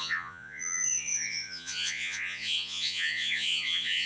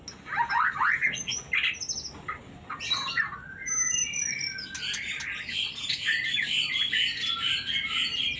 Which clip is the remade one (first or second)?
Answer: first